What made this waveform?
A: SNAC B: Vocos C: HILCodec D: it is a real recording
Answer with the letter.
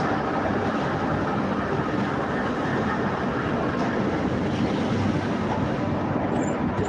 D